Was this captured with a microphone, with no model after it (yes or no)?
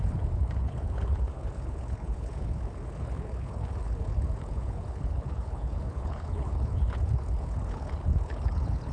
no